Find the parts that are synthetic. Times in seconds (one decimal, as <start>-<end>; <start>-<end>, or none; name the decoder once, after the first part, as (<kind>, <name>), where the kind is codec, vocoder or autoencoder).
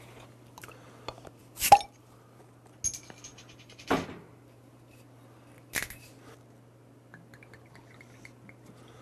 1.4-2.4 (vocoder, BigVGAN v2); 3.3-4.2